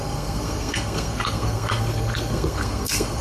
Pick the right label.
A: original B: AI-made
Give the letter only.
B